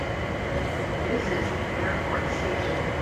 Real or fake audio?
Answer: real